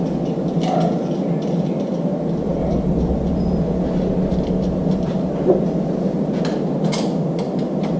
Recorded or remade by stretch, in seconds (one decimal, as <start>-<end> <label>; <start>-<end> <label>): 0.0-8.0 recorded